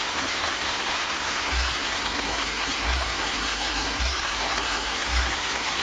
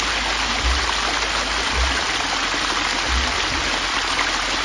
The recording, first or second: second